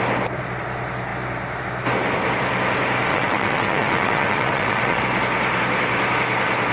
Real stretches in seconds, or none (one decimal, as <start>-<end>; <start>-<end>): 0.0-3.1; 5.0-6.7